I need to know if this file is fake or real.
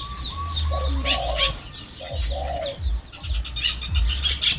real